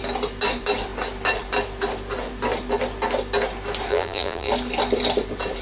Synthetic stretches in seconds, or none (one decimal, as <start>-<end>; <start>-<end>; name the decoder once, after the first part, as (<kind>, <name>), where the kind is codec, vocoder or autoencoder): 3.9-4.5 (vocoder, BigVGAN v2)